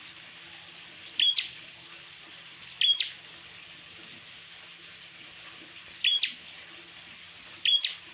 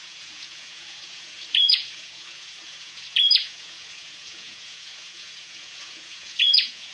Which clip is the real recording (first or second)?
first